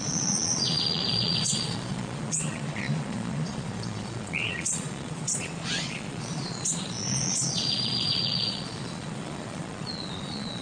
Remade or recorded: remade